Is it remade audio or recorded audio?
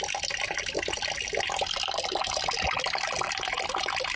recorded